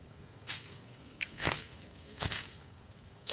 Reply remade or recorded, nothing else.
remade